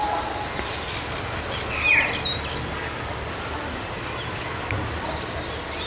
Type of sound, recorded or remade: recorded